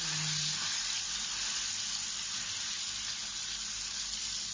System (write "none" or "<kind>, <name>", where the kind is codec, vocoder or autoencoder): none